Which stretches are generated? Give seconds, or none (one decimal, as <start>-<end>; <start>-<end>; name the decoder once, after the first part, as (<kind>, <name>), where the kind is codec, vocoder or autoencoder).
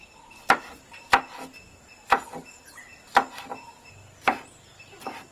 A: 0.0-0.6 (vocoder, BigVGAN v2)